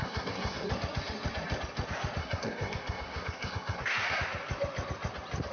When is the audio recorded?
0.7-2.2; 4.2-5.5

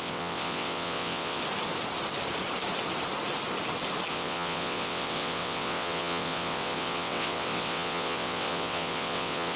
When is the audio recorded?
1.4-4.1

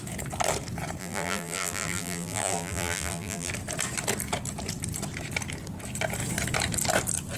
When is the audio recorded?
0.0-1.0; 3.5-7.4

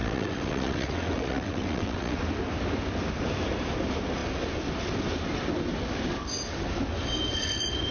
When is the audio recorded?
2.2-7.9

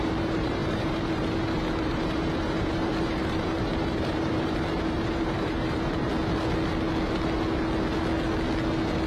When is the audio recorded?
6.1-9.1